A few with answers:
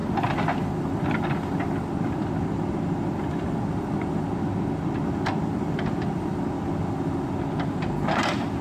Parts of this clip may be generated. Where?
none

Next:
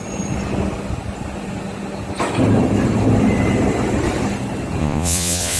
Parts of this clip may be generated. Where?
4.8-5.6 (vocoder, Vocos)

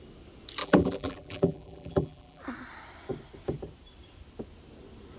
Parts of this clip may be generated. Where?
0.6-2.4 (vocoder, BigVGAN v2)